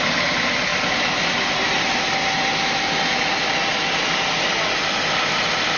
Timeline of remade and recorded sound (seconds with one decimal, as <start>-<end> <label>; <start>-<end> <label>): 0.0-5.8 recorded